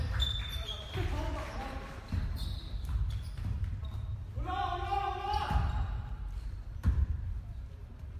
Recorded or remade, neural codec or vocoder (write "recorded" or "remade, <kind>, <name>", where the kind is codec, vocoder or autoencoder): remade, vocoder, BigVGAN v2